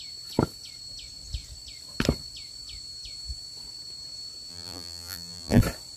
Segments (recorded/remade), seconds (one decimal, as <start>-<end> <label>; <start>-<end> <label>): 0.0-4.5 recorded; 4.5-5.6 remade; 5.6-6.0 recorded